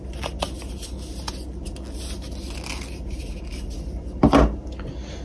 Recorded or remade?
recorded